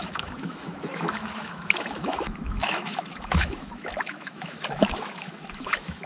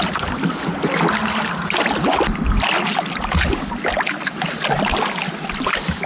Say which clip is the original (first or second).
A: second